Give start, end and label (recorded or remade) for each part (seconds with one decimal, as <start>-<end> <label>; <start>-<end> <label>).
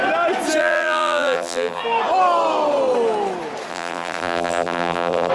0.0-0.6 recorded; 0.6-1.8 remade; 1.8-3.7 recorded; 3.7-5.3 remade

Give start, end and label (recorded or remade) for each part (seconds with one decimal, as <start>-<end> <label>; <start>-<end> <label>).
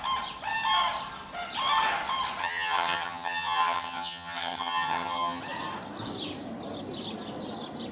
0.0-2.4 recorded; 2.4-5.4 remade; 5.4-7.9 recorded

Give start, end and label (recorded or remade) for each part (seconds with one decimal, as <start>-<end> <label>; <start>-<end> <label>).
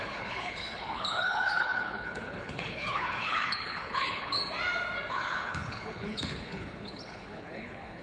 0.0-4.4 remade; 4.4-5.1 recorded; 5.1-8.0 remade